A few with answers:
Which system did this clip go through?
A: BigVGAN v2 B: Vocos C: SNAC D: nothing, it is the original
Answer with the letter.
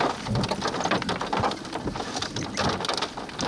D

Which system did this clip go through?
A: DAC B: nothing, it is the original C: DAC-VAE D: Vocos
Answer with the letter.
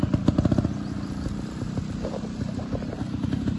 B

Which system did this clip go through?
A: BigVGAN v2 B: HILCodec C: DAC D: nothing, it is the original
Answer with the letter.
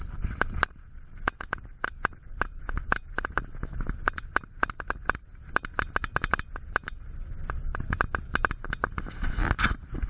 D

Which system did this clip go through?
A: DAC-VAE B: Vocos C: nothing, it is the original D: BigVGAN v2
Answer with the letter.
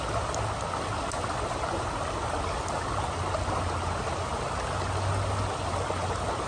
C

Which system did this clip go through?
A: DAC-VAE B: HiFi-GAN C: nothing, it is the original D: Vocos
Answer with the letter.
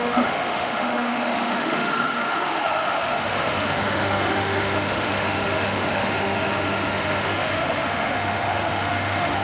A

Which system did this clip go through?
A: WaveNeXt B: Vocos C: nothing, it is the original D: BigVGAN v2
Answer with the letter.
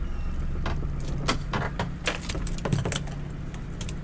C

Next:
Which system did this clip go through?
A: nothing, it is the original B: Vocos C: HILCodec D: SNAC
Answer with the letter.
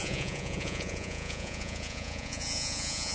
B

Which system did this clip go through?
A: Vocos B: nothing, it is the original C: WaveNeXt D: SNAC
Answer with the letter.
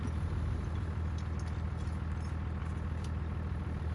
B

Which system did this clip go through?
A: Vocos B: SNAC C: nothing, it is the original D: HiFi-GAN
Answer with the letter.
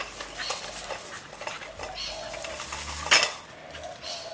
C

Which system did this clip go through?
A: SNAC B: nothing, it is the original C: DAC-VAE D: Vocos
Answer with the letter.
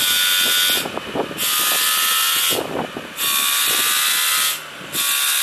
B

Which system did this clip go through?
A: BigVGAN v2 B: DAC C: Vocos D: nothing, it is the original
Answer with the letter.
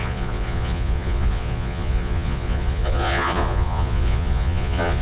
C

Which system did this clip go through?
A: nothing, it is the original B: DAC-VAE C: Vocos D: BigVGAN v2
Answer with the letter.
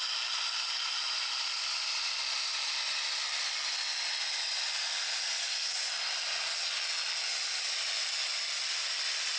A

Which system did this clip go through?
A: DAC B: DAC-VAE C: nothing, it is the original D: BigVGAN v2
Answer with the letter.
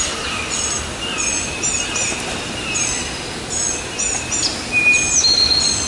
C